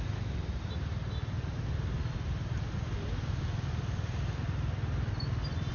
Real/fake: real